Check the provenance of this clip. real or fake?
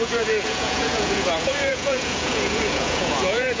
fake